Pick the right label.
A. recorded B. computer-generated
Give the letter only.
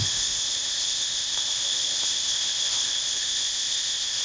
B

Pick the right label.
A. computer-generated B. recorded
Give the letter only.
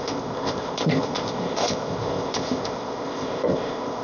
A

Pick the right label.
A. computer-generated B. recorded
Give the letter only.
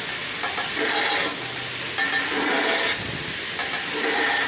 B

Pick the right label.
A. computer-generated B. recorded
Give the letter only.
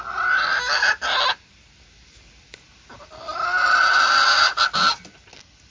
B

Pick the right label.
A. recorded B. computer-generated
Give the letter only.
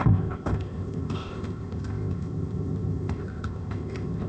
B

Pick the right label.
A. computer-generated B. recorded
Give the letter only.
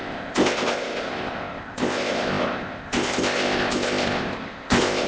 A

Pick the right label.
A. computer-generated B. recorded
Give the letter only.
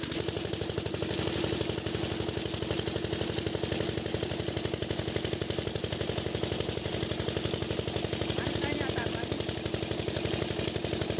B